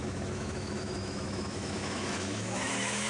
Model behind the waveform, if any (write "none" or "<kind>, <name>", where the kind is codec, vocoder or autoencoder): autoencoder, DAC-VAE